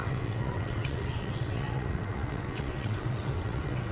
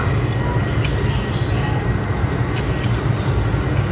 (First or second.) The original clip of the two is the second